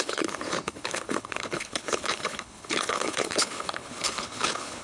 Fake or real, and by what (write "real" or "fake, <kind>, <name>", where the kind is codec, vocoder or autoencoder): fake, codec, HILCodec